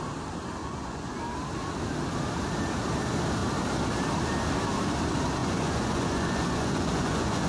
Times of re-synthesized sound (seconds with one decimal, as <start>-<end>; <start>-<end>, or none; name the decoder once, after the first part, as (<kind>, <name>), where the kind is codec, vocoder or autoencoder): 0.6-1.2 (vocoder, Vocos); 5.4-7.5